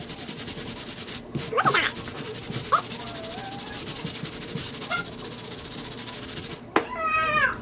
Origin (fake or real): real